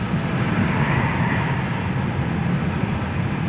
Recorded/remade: recorded